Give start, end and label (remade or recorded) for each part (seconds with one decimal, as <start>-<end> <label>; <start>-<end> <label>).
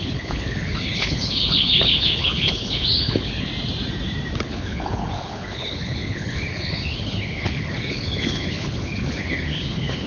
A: 0.0-3.5 remade; 3.5-4.4 recorded; 4.4-10.1 remade